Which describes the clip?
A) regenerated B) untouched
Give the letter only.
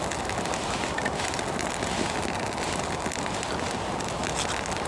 B